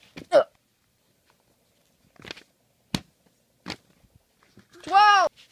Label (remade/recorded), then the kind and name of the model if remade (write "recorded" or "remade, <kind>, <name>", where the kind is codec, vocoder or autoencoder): recorded